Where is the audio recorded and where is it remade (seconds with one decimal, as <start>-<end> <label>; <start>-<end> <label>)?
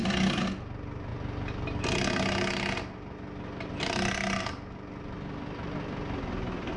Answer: 0.0-6.8 recorded